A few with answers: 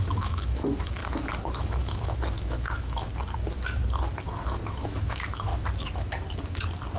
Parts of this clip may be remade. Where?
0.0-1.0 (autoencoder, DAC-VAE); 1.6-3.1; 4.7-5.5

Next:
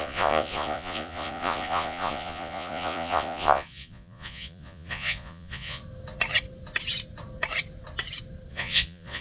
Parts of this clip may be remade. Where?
0.0-5.8 (vocoder, Vocos); 8.5-9.2

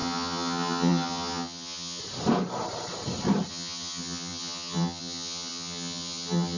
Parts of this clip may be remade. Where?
0.0-2.0 (vocoder, HiFi-GAN); 3.5-6.6

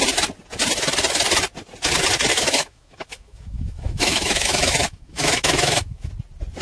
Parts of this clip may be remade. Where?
2.3-6.1 (autoencoder, DAC-VAE)